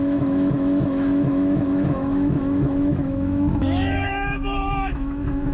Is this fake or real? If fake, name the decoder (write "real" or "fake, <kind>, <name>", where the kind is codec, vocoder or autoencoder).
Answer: fake, autoencoder, DAC-VAE